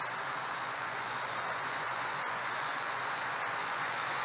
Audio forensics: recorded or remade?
remade